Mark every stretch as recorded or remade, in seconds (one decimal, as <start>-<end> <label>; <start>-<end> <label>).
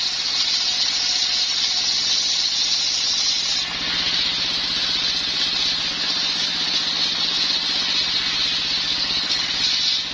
0.0-8.9 recorded; 8.9-9.5 remade; 9.5-10.1 recorded